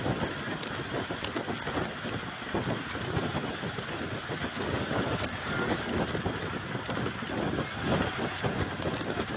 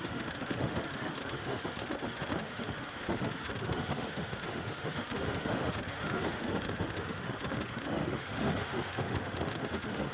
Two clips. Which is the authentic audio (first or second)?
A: first